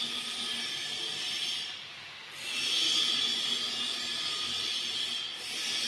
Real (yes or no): yes